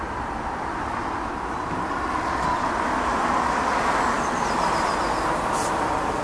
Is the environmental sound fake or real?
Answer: real